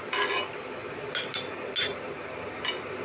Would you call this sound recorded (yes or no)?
yes